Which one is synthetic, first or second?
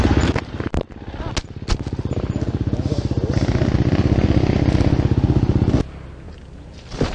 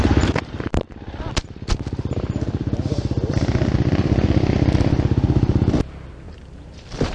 second